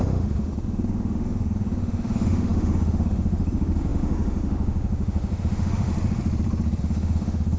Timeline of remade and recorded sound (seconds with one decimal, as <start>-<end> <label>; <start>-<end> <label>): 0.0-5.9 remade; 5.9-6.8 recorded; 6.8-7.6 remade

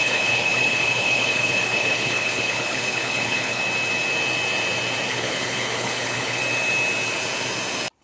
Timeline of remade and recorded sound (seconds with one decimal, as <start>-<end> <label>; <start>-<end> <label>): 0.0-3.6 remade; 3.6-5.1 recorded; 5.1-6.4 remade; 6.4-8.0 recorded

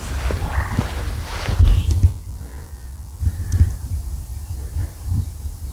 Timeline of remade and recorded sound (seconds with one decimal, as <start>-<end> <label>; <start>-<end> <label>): 0.0-2.1 recorded; 2.1-3.2 remade; 3.2-5.7 recorded

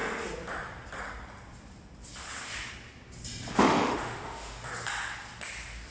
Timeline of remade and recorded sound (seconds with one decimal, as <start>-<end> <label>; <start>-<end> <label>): 0.0-3.5 recorded; 3.5-4.7 remade; 4.7-5.9 recorded

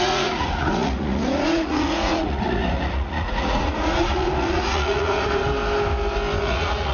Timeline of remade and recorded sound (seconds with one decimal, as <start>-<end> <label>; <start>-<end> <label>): 0.0-5.4 remade; 5.4-6.4 recorded; 6.4-6.9 remade